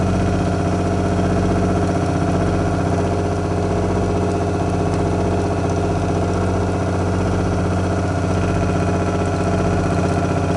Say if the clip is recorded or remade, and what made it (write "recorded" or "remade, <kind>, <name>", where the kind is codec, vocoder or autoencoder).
recorded